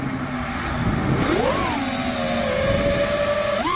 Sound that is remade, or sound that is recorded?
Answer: recorded